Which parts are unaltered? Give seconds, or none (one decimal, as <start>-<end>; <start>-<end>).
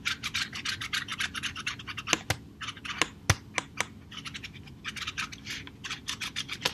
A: 0.0-6.7